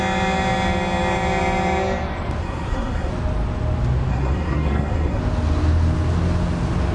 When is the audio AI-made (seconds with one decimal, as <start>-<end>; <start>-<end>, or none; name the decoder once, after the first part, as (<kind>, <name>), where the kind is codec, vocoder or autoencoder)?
2.4-3.1 (codec, SNAC); 4.1-5.2